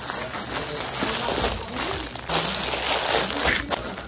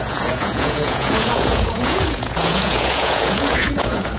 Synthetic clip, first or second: second